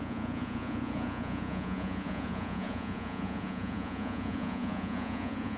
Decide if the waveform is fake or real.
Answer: fake